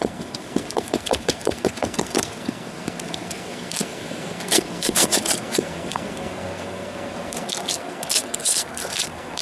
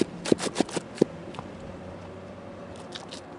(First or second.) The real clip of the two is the second